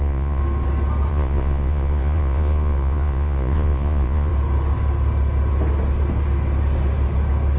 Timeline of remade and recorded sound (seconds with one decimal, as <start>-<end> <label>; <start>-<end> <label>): 0.0-0.4 remade; 0.4-1.1 recorded; 1.1-4.3 remade; 4.3-7.6 recorded